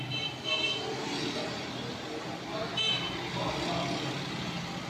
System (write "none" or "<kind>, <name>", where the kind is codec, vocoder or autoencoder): none